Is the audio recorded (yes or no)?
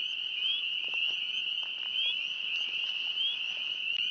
yes